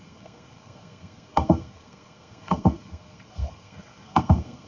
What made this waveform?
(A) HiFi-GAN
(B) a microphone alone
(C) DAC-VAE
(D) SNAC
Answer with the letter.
D